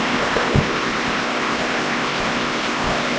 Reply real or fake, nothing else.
fake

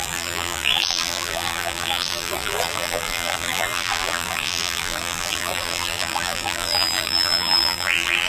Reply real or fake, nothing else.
fake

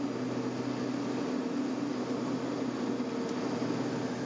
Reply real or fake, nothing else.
real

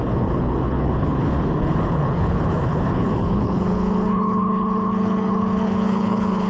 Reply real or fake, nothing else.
fake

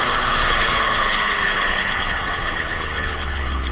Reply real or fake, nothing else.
fake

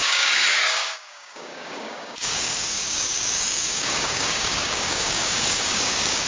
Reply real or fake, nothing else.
fake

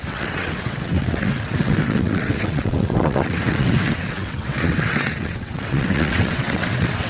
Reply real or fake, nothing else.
fake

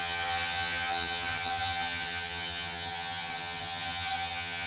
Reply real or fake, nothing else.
fake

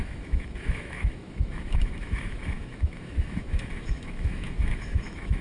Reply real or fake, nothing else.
fake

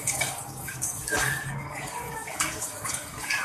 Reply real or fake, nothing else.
fake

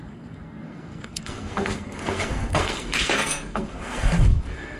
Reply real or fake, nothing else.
fake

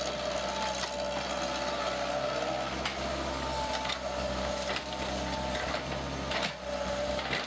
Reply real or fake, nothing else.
real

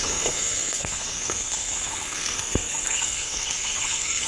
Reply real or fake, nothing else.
fake